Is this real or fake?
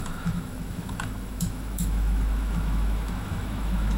fake